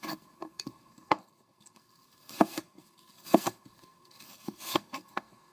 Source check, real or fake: fake